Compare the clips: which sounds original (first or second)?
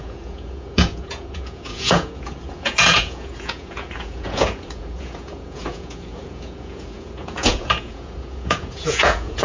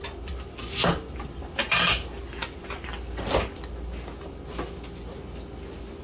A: second